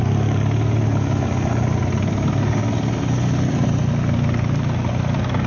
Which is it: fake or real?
real